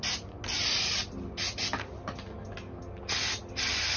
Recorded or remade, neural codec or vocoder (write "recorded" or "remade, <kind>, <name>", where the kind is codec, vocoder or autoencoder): recorded